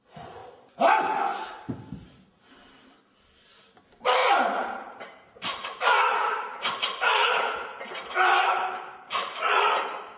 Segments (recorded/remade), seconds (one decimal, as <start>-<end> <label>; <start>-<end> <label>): 0.0-4.2 recorded; 4.2-9.4 remade; 9.4-10.2 recorded